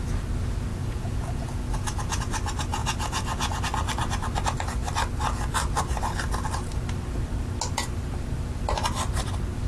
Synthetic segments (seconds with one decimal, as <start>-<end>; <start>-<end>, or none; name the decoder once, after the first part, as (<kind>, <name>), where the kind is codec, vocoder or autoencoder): 0.7-2.2 (vocoder, Vocos); 2.8-3.6